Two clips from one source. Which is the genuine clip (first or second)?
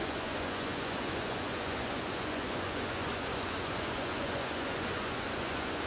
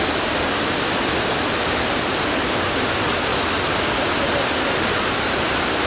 second